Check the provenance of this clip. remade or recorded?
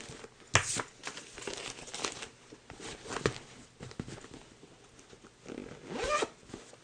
recorded